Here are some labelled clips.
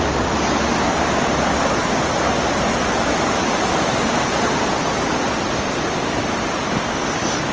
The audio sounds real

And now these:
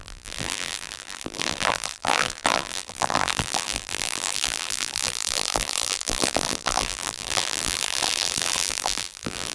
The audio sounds fake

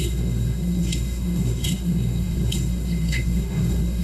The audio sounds fake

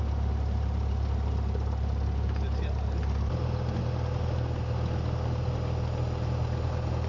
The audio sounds real